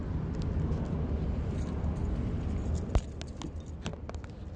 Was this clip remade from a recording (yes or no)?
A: no